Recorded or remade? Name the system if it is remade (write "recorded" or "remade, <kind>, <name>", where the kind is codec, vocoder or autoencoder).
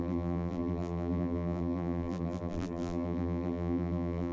remade, vocoder, BigVGAN v2